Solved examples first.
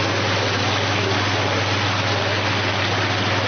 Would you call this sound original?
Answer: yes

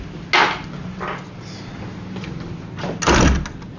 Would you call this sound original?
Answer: yes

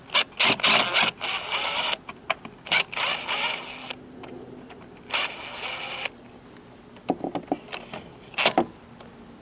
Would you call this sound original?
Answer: yes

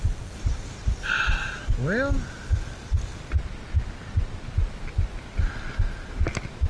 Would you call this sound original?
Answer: yes